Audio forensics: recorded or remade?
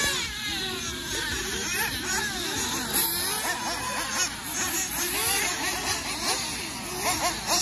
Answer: recorded